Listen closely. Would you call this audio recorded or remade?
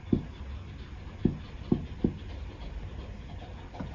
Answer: recorded